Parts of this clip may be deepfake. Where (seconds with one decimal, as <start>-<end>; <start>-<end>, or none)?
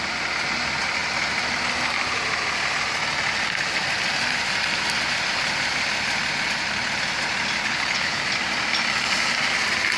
7.6-8.2